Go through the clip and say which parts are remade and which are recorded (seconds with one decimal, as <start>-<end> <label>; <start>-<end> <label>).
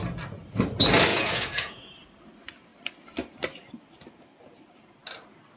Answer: 0.0-1.1 recorded; 1.1-1.9 remade; 1.9-5.6 recorded